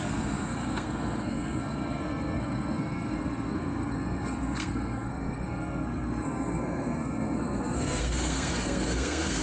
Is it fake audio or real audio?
fake